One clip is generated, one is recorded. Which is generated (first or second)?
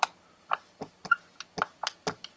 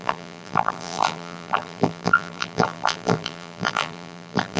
second